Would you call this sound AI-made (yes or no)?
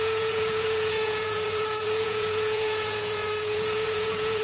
yes